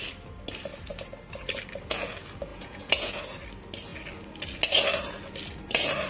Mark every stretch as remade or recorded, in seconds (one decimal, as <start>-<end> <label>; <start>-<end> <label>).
0.0-2.5 recorded; 2.5-3.2 remade; 3.2-6.1 recorded